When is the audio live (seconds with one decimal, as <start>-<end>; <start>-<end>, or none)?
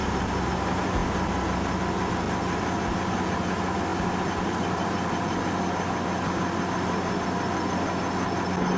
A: 0.0-8.8